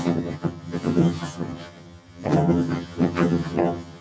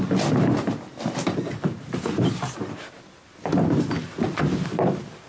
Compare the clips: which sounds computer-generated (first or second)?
first